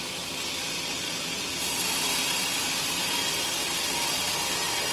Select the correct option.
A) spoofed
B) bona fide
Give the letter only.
A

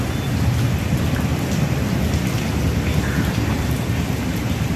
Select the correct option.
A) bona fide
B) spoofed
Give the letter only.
A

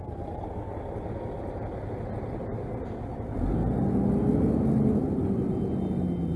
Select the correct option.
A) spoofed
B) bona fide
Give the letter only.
B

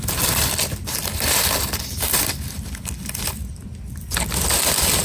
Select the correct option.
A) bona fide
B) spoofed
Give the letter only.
A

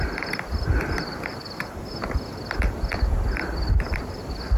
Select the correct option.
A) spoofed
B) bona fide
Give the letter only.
B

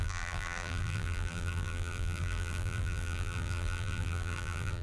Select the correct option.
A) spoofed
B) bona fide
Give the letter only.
A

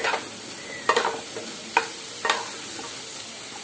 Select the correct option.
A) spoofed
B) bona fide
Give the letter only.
B